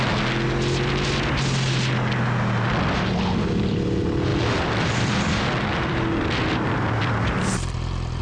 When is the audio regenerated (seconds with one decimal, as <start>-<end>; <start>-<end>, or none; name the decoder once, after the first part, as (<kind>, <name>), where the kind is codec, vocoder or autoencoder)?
4.3-8.2 (vocoder, BigVGAN v2)